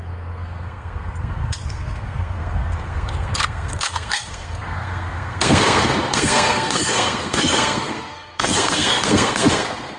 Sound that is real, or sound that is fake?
fake